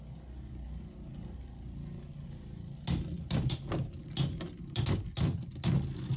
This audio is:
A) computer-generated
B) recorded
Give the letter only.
B